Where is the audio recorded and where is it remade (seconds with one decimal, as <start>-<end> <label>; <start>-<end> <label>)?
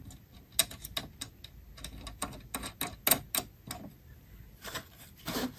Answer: 0.0-5.6 recorded